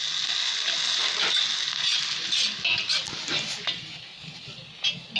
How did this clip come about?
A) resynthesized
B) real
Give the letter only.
B